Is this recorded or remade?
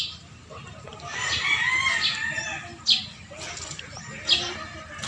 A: recorded